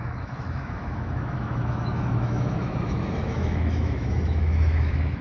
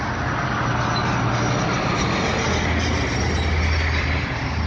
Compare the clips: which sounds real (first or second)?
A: second